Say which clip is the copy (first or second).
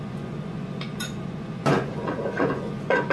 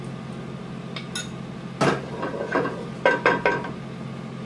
first